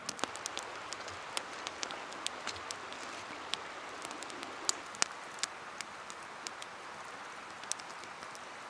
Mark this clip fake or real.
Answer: real